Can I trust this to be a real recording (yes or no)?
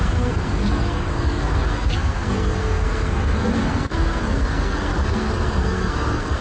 no